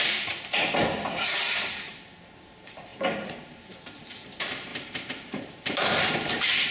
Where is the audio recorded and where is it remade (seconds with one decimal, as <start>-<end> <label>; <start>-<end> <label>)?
0.0-6.7 remade